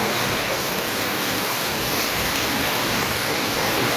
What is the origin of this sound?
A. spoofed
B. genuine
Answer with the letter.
A